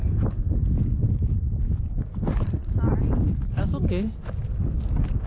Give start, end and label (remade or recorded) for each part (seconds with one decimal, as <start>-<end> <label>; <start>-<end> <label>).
0.0-5.3 recorded